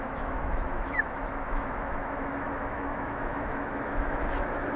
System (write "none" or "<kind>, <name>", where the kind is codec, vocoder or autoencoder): autoencoder, DAC-VAE